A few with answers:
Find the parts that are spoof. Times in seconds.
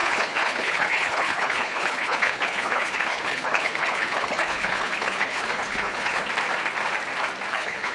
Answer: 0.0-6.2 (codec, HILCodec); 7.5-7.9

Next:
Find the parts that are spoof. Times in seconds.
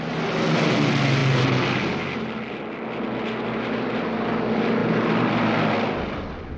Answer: none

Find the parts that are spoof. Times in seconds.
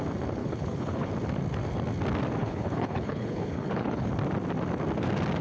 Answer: 0.4-1.1 (codec, HILCodec); 2.4-4.1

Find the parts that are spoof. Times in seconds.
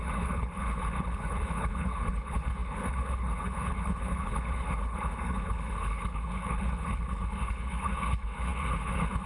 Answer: 0.0-9.3 (codec, HILCodec)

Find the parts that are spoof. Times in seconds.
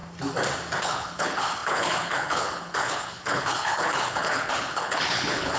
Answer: 0.8-5.6 (codec, HILCodec)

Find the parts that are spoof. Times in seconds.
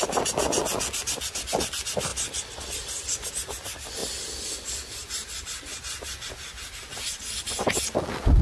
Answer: none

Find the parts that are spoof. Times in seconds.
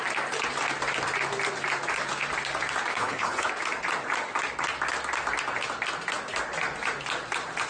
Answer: 2.9-3.5 (codec, HILCodec)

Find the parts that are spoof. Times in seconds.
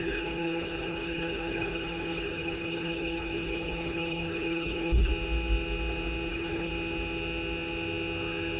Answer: 0.0-5.1 (codec, HILCodec); 6.3-6.7